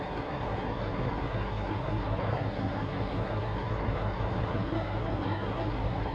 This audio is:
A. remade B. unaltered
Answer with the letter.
A